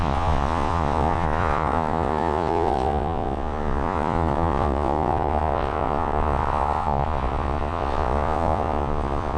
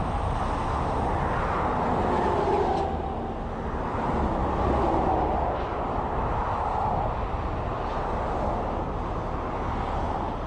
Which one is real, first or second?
second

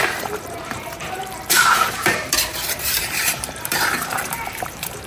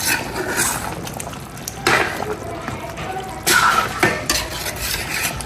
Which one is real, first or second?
second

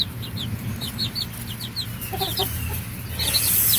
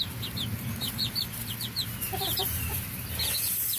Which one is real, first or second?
first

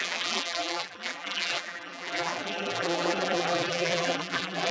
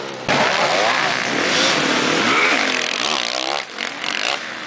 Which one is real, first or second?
second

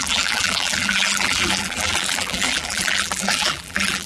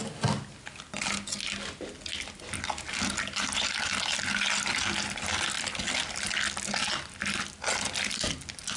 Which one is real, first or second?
second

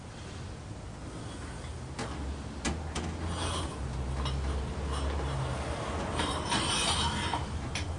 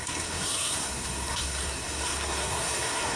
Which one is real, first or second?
first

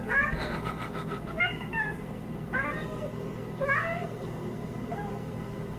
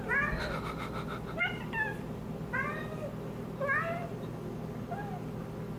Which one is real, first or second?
second